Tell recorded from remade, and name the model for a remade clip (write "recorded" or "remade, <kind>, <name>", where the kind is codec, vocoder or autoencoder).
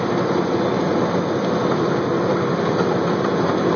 recorded